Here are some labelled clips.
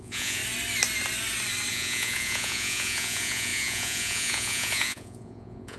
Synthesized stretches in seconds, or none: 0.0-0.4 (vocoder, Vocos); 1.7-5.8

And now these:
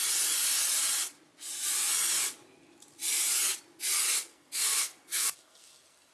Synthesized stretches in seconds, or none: 4.3-6.1 (codec, SNAC)

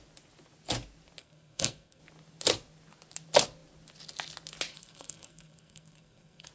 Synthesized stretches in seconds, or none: 1.2-2.0 (codec, SNAC); 4.7-6.5

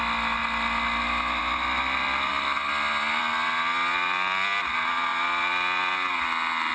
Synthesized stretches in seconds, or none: none